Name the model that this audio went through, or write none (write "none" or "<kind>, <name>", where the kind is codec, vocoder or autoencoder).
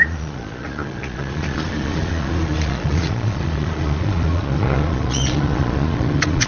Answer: vocoder, Vocos